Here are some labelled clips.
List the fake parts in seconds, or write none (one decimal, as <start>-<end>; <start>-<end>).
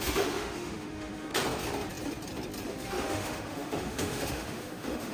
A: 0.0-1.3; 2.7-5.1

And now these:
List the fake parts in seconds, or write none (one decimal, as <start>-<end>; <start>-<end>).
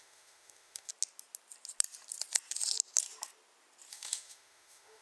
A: 0.0-0.9; 3.9-5.0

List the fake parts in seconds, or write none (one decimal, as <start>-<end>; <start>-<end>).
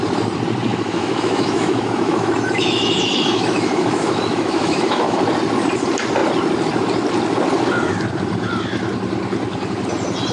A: 0.7-5.2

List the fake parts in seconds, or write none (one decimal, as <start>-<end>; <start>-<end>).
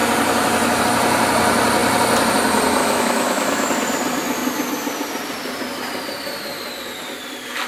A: 2.8-3.7